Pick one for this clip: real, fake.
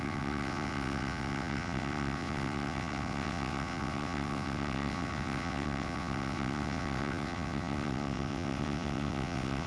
fake